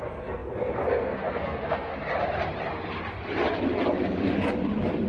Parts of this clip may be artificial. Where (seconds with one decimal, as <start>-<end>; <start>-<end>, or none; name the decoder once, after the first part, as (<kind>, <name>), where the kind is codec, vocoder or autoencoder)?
0.0-1.9 (codec, SNAC)